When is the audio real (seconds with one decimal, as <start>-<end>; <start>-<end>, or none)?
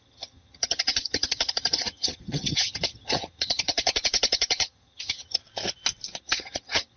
5.4-6.2